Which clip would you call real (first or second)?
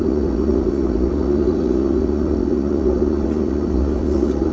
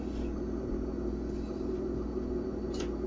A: second